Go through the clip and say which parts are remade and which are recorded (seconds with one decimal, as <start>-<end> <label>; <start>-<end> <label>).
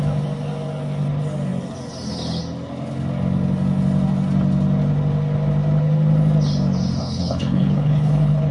0.0-7.0 recorded; 7.0-8.5 remade